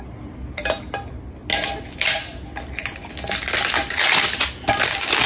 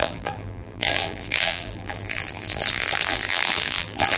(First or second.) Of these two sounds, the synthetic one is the second